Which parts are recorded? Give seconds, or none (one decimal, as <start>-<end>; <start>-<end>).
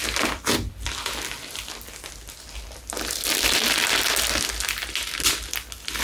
2.1-6.0